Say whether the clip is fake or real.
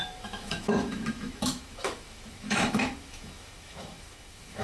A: fake